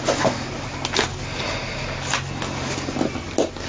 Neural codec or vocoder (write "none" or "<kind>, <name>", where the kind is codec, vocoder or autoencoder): none